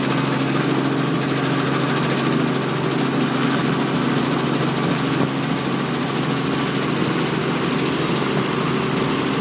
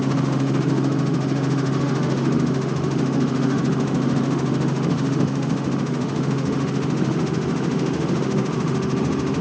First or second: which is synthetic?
second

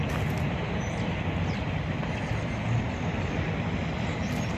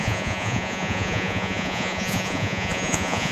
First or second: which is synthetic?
second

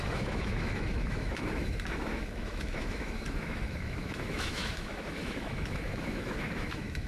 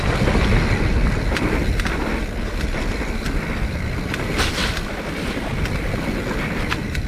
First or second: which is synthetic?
first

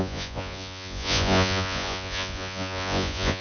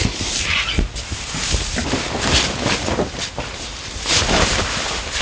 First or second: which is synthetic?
first